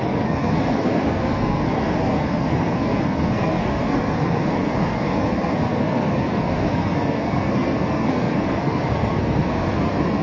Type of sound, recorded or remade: remade